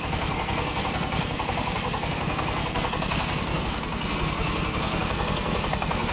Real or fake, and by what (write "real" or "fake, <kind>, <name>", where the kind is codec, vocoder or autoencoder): fake, codec, SNAC